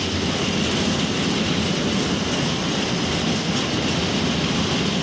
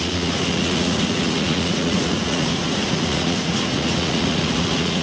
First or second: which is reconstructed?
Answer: second